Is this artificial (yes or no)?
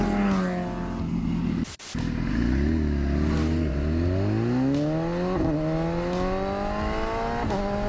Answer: no